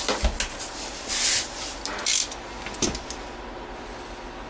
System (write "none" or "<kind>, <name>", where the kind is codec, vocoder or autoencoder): none